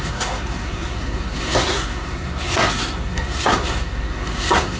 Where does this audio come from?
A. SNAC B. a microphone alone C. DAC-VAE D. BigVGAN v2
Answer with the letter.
A